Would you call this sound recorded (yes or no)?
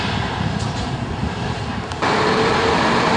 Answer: no